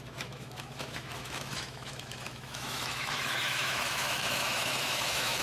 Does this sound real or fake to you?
fake